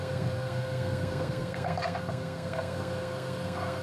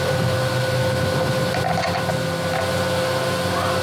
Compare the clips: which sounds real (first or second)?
second